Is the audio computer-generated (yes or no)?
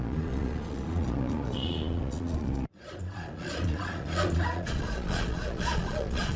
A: yes